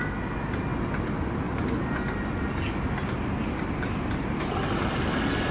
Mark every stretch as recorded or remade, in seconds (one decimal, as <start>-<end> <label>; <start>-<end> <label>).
0.0-5.5 recorded